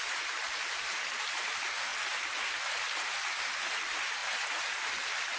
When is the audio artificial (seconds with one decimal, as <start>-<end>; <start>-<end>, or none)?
0.0-1.9; 3.8-4.2; 4.8-5.4

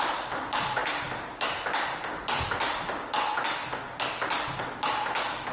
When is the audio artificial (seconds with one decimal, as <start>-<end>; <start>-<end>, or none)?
0.0-0.8; 4.1-5.5